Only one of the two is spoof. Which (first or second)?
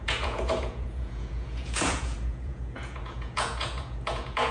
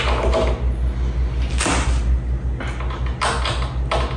first